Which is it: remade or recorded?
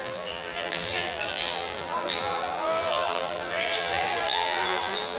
remade